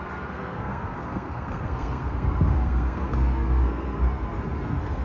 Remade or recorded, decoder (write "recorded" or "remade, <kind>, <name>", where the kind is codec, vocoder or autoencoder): remade, codec, SNAC